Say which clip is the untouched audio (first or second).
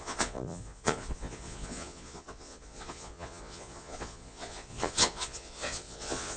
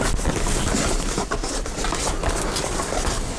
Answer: second